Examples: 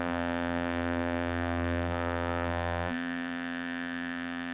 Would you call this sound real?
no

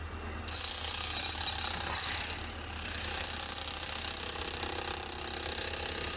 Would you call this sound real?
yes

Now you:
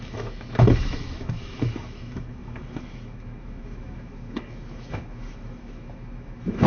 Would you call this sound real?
no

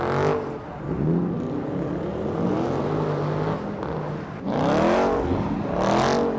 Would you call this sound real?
yes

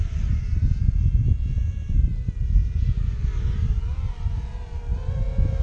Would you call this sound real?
yes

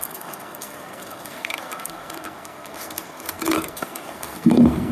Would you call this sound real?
no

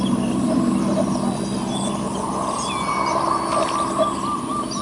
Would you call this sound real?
yes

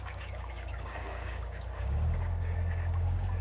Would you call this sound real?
no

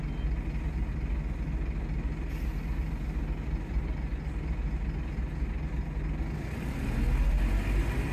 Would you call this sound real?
yes